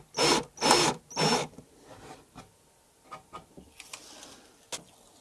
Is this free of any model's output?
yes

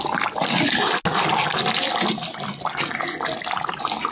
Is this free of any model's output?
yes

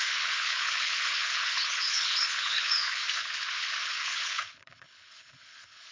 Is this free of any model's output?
no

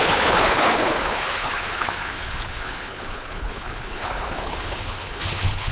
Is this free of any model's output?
no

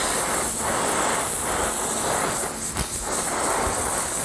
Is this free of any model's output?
yes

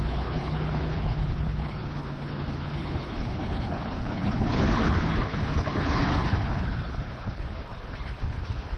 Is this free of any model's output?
no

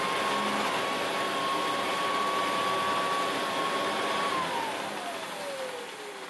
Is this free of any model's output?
yes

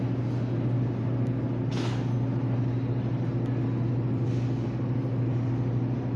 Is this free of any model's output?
yes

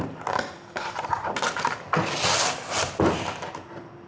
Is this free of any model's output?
yes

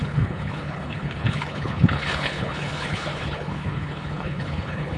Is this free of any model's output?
no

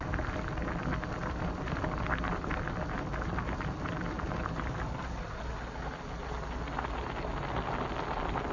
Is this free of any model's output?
yes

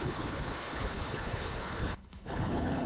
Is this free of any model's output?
no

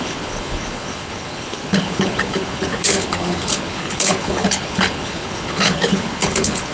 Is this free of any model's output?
no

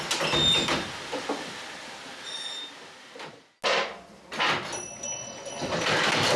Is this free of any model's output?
yes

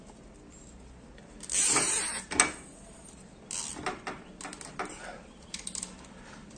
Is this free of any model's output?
yes